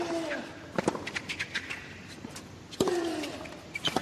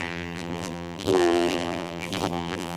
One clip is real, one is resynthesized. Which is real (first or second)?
first